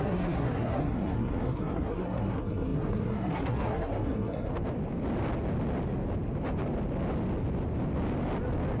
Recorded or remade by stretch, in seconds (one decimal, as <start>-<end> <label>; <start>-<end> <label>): 0.0-4.5 remade; 4.5-8.8 recorded